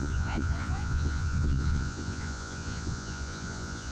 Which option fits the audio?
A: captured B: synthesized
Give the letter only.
B